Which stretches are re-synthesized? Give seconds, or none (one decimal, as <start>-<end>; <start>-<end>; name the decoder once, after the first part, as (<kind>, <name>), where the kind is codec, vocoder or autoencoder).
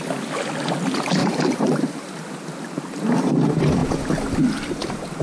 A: 1.2-1.8 (vocoder, BigVGAN v2)